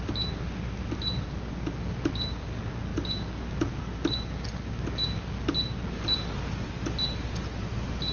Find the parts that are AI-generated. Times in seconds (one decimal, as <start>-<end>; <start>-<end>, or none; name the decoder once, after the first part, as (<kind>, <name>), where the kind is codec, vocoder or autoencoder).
none